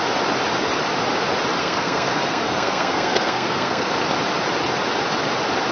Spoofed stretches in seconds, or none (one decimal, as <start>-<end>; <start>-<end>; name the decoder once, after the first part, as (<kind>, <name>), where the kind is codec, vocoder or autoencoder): 1.6-3.9 (codec, SNAC)